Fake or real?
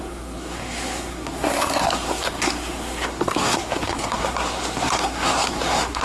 fake